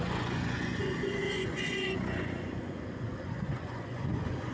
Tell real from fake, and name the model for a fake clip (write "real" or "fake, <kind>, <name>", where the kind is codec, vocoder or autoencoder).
fake, vocoder, Vocos